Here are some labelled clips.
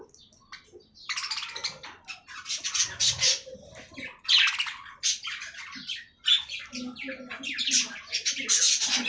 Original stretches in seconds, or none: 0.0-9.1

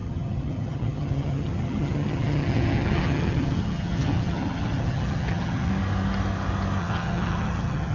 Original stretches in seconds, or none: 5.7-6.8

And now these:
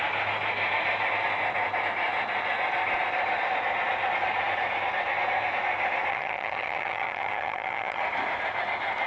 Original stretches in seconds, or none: 0.0-6.1; 8.0-9.1